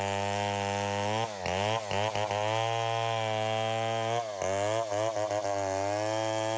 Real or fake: real